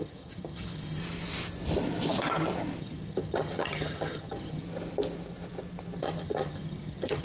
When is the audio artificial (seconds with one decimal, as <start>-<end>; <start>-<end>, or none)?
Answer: 0.0-1.0; 2.8-4.6; 6.0-7.2